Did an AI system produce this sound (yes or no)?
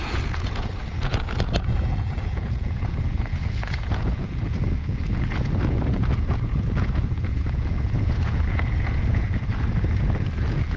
yes